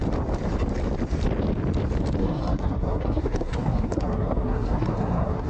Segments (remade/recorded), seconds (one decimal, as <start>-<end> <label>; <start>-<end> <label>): 0.0-2.2 recorded; 2.2-5.5 remade